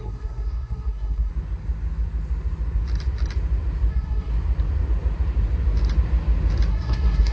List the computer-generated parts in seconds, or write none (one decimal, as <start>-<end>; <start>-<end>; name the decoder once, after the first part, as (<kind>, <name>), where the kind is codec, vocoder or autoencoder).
0.0-1.3 (codec, SNAC); 3.9-4.3; 6.7-7.3